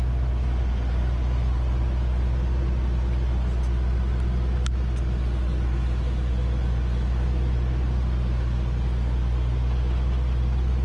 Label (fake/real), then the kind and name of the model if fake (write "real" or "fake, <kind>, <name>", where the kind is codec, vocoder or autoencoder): real